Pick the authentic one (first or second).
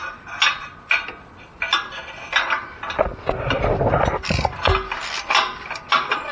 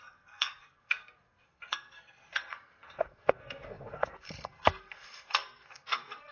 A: first